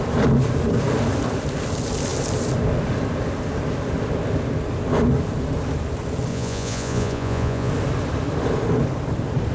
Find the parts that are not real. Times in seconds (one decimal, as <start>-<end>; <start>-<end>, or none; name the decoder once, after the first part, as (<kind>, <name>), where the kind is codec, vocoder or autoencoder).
6.3-7.7 (vocoder, Vocos)